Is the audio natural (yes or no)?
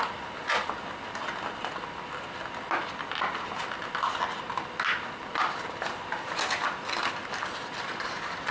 yes